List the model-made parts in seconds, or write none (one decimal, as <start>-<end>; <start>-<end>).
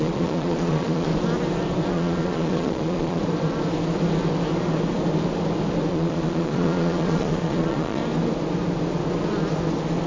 0.0-1.1; 1.9-3.2; 5.9-8.0